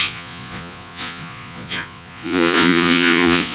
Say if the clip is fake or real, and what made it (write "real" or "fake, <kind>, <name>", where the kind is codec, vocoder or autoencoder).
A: fake, vocoder, Vocos